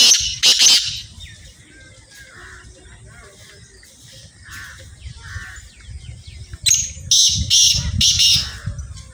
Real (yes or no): yes